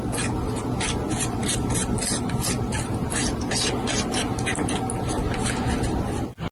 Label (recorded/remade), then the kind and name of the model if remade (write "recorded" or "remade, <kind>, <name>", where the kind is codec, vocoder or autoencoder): recorded